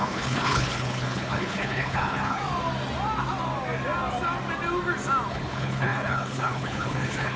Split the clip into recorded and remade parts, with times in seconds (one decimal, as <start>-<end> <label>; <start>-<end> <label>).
0.0-2.4 remade; 2.4-5.3 recorded; 5.3-7.4 remade